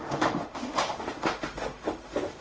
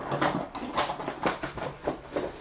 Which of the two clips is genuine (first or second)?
second